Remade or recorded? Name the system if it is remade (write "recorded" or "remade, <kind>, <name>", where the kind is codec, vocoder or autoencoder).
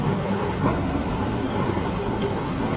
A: remade, codec, SNAC